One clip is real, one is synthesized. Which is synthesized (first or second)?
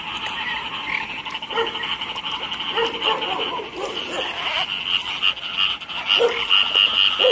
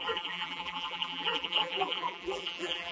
second